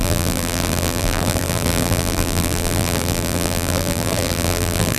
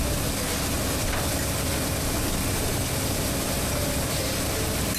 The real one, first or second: second